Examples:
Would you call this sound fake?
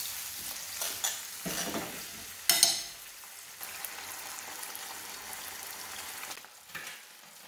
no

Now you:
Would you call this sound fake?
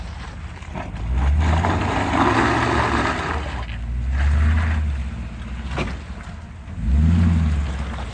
no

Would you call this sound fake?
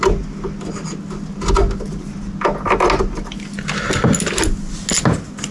no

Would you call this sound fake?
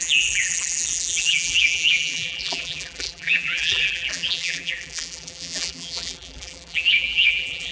yes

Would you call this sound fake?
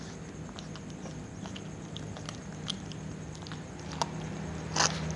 no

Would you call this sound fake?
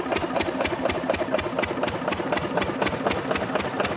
no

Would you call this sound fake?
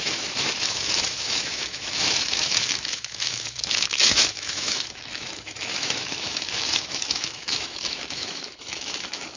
yes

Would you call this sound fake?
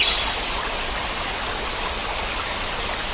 no